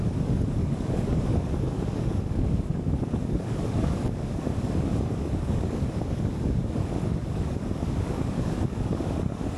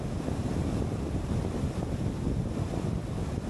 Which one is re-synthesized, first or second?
first